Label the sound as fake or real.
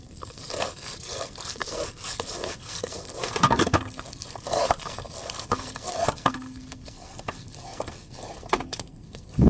fake